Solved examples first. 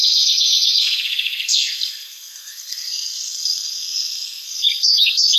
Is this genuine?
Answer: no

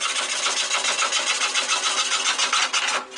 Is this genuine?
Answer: yes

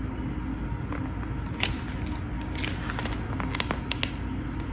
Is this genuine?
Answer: yes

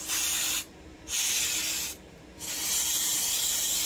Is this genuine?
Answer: no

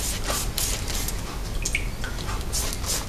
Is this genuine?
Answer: yes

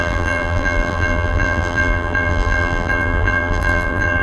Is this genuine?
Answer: no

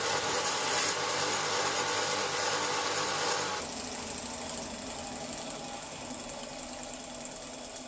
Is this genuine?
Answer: yes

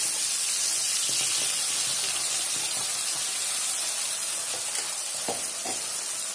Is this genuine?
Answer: yes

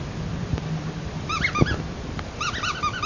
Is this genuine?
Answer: no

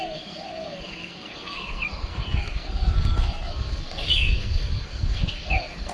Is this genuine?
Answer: no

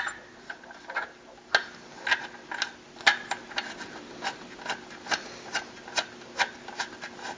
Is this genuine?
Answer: yes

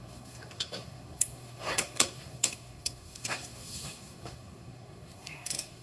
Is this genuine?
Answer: no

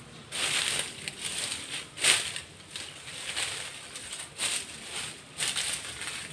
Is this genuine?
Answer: yes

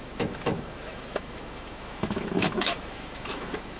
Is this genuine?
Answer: no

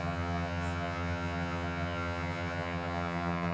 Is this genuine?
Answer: no